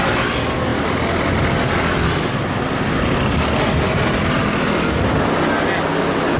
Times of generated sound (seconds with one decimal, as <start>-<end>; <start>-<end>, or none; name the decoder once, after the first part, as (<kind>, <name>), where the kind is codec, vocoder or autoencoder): none